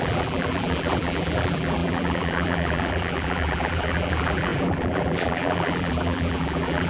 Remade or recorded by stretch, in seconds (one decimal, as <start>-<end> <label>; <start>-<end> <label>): 0.0-6.9 remade